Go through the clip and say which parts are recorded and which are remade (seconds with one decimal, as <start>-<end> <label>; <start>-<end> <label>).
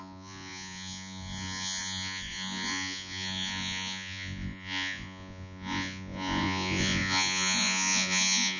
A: 0.0-8.6 remade